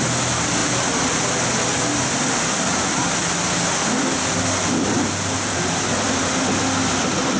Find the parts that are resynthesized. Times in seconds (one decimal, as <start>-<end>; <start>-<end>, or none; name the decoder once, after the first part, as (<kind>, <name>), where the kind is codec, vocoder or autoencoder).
none